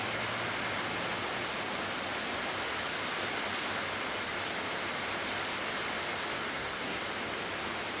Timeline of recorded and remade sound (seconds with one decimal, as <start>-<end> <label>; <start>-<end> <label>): 0.0-6.5 recorded; 6.5-7.0 remade; 7.0-8.0 recorded